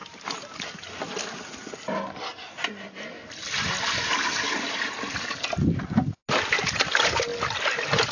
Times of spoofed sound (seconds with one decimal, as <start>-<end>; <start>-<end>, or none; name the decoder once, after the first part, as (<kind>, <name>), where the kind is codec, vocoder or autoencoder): none